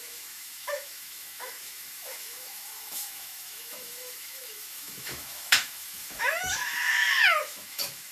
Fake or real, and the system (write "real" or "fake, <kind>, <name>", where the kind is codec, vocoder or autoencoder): fake, autoencoder, DAC-VAE